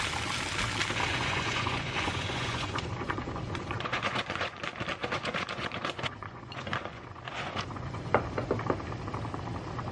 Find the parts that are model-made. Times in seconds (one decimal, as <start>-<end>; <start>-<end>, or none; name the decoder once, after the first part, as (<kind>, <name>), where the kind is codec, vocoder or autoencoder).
1.1-4.6 (vocoder, Vocos); 5.0-8.5